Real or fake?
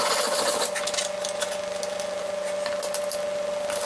real